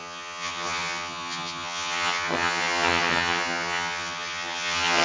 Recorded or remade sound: remade